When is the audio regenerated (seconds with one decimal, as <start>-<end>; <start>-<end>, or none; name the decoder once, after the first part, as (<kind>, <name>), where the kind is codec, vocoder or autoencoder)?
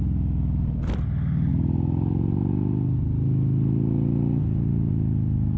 none